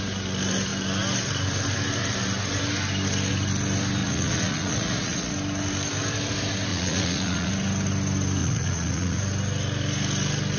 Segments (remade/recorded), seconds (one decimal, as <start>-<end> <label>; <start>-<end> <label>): 0.0-4.0 recorded; 4.0-5.3 remade; 5.3-6.7 recorded; 6.7-7.5 remade; 7.5-8.4 recorded; 8.4-9.2 remade; 9.2-10.6 recorded